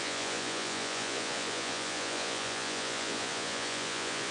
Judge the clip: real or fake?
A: fake